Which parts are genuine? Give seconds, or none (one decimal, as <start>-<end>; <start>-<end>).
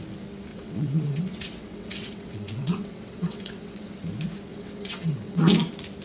0.0-0.5; 3.9-4.5; 5.5-6.0